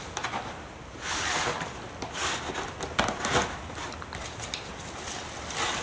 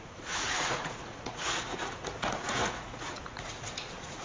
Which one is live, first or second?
first